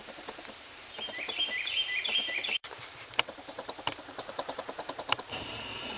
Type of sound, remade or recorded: remade